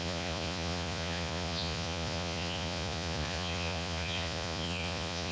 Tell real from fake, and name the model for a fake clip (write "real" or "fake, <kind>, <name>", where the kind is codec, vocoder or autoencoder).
fake, vocoder, Vocos